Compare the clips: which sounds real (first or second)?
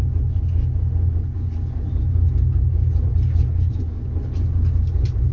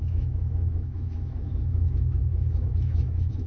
first